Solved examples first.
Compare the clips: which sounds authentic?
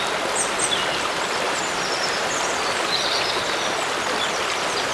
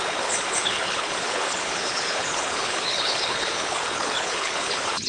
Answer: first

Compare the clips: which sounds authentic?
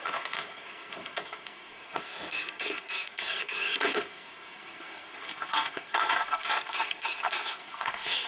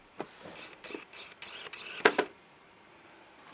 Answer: second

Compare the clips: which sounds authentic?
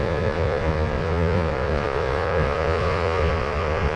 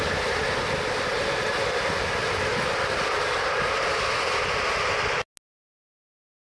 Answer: second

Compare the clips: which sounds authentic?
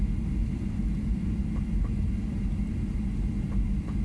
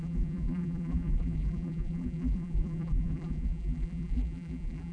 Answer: first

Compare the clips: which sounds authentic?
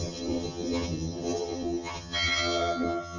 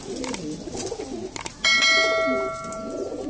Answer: second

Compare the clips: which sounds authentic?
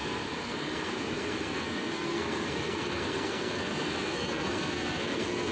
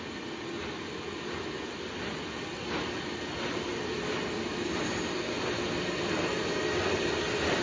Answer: second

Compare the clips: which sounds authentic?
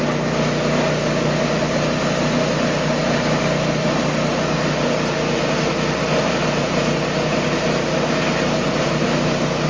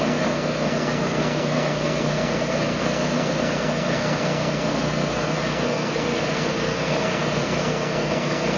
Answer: first